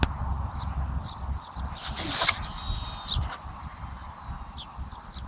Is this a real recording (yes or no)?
yes